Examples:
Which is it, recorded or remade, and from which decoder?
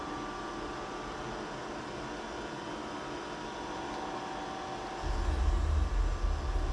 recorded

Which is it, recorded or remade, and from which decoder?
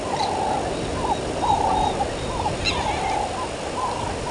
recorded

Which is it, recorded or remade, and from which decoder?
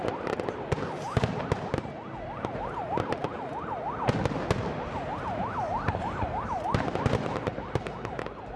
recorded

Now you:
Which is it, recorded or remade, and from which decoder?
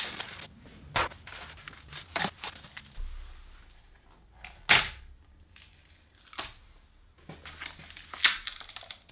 recorded